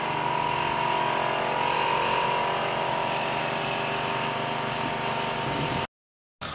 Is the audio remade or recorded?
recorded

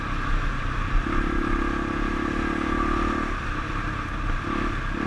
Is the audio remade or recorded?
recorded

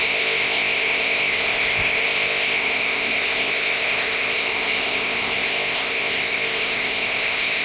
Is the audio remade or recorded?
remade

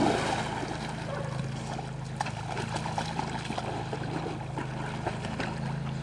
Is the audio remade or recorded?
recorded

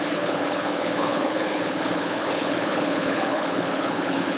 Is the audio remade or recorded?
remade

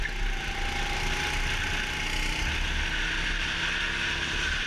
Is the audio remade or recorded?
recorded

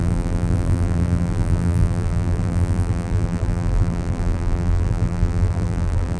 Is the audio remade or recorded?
remade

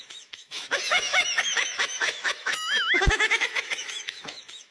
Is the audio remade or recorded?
remade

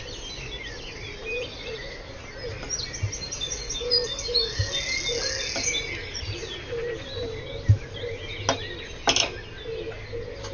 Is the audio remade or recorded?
recorded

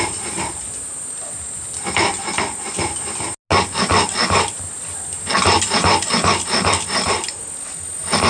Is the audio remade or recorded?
recorded